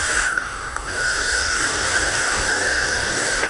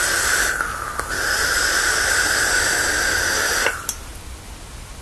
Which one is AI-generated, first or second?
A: first